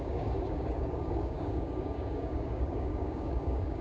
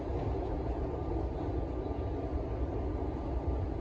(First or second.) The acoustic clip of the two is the second